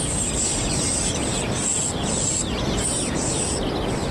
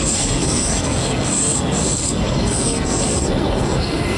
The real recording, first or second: first